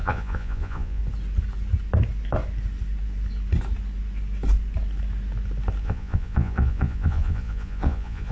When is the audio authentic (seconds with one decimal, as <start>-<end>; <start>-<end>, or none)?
1.0-5.8